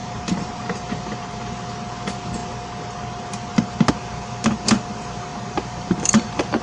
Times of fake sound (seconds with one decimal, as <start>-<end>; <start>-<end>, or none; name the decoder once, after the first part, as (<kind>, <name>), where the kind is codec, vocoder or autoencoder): 0.0-1.4 (vocoder, BigVGAN v2); 5.3-6.6